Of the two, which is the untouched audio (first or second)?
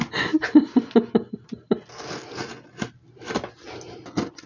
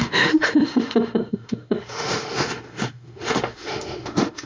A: first